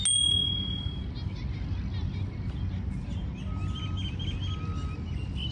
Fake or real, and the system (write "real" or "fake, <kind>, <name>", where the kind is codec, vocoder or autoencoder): real